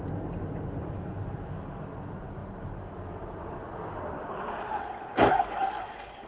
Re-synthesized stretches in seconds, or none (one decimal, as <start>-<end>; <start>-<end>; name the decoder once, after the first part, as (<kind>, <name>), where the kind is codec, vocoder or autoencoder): none